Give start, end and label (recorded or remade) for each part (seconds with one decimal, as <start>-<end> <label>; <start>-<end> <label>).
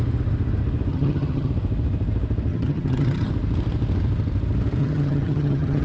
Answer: 0.0-0.9 recorded; 0.9-1.5 remade; 1.5-2.5 recorded; 2.5-3.3 remade; 3.3-4.8 recorded; 4.8-5.8 remade